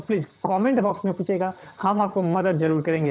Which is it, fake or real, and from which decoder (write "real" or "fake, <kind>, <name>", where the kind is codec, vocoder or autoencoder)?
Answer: fake, vocoder, HiFi-GAN